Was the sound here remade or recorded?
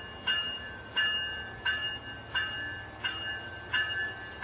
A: recorded